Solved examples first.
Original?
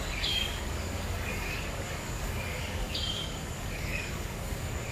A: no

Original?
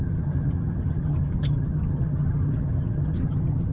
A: no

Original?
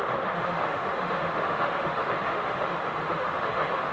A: no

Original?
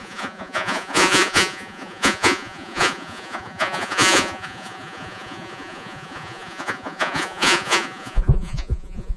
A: no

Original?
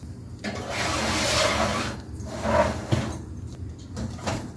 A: yes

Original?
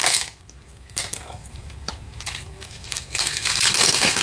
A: no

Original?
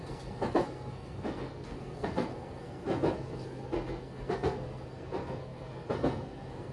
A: no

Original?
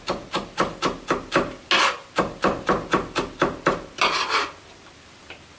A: yes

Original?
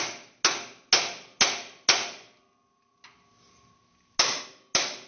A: yes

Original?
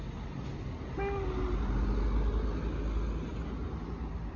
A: yes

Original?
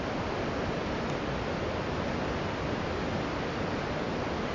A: yes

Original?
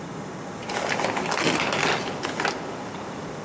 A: yes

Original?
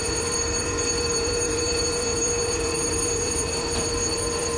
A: no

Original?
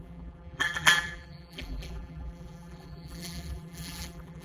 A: no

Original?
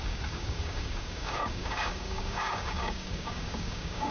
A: no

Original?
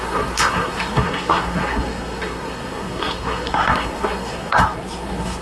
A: no